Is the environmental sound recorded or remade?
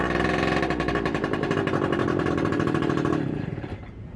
remade